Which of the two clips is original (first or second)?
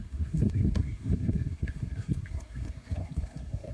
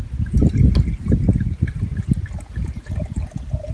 second